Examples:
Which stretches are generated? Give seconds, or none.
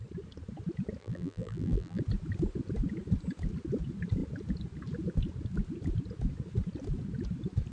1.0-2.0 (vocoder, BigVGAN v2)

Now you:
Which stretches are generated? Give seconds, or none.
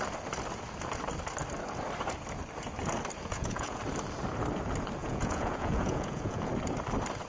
3.2-3.8 (vocoder, Vocos); 5.0-6.5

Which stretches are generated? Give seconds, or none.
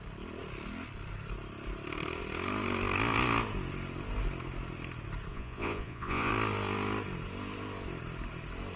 5.3-6.3 (vocoder, Vocos)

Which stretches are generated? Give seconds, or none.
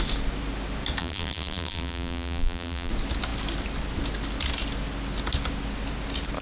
1.0-2.9 (vocoder, BigVGAN v2)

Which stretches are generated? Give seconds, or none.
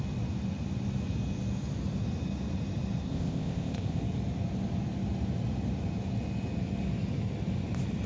3.1-4.0 (codec, ZipCodec)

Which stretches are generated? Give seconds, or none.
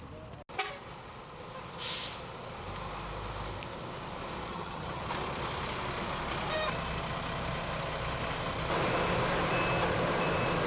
4.5-5.0 (vocoder, HiFi-GAN)